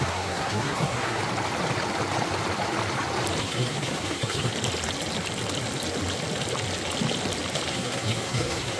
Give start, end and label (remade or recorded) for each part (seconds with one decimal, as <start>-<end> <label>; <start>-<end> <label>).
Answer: 0.0-1.2 remade; 1.2-3.4 recorded; 3.4-4.5 remade; 4.5-7.7 recorded; 7.7-8.8 remade